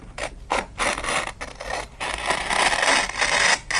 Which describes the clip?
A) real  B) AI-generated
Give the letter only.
A